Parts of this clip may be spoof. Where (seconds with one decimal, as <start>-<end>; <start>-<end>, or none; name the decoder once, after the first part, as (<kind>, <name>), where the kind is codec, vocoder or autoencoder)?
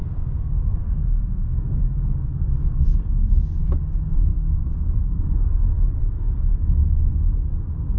0.0-3.6 (codec, SNAC); 4.3-5.5; 6.0-7.5